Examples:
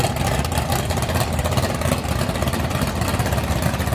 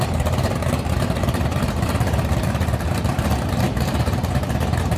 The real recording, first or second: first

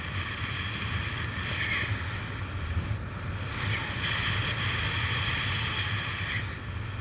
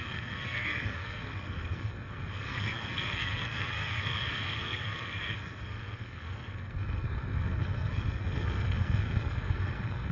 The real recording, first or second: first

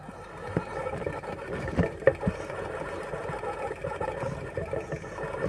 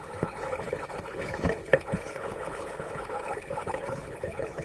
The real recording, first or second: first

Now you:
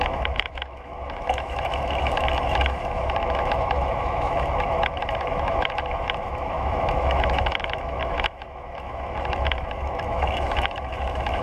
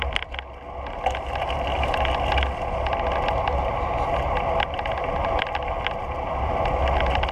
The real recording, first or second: second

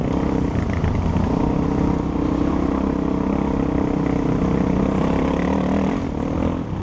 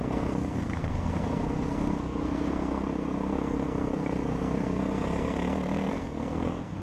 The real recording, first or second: first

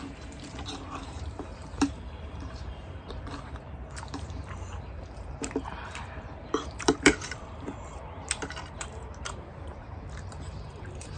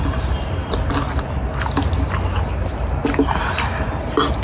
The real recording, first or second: second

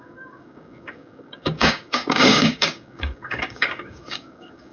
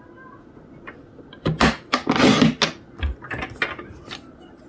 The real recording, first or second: second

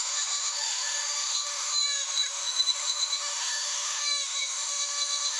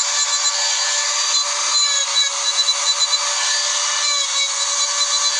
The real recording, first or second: second